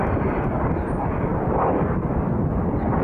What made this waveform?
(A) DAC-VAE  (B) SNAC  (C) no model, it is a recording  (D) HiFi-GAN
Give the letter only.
C